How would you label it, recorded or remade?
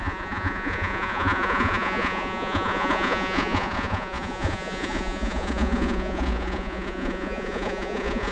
remade